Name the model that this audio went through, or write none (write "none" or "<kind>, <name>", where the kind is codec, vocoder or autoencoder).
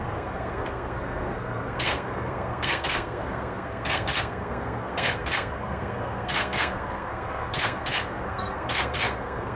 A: codec, SNAC